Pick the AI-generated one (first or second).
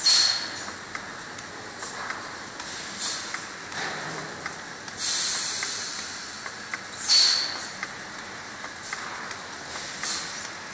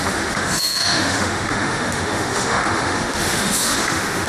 second